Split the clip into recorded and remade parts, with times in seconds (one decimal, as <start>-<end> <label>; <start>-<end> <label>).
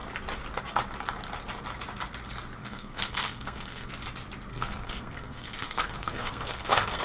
0.0-2.6 recorded; 2.6-3.9 remade; 3.9-4.5 recorded; 4.5-7.0 remade